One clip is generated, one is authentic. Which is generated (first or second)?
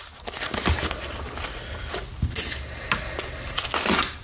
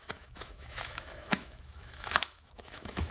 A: second